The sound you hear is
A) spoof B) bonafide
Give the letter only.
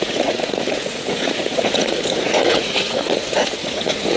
A